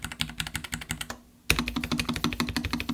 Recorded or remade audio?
recorded